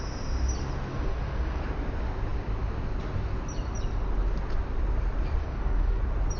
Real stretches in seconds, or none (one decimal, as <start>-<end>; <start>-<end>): 0.0-0.9; 1.6-5.4; 6.0-6.4